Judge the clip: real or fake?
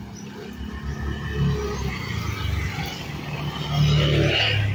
real